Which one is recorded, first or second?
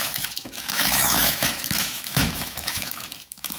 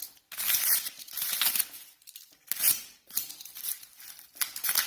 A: second